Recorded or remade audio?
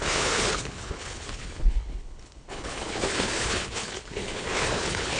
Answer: remade